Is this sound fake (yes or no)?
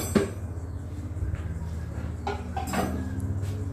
no